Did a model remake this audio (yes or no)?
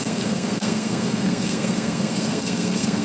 yes